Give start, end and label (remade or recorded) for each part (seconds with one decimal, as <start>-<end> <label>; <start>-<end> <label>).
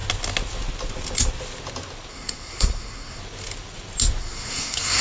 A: 0.0-2.1 recorded; 2.1-3.2 remade; 3.2-4.2 recorded; 4.2-5.0 remade